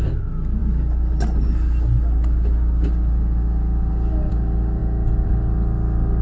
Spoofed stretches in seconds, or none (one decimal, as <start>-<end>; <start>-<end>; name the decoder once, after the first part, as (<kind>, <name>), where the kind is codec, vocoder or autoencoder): none